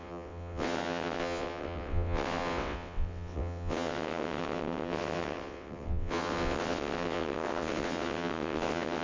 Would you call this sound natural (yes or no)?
no